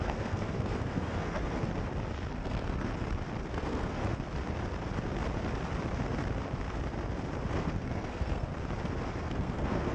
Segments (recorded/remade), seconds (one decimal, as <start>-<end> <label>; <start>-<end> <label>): 0.0-1.7 remade; 1.7-2.3 recorded; 2.3-2.9 remade; 2.9-3.5 recorded; 3.5-4.0 remade; 4.0-7.5 recorded; 7.5-8.5 remade; 8.5-9.2 recorded; 9.2-9.9 remade